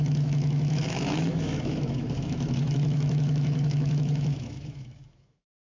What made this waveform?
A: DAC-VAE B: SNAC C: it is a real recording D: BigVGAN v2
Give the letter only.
A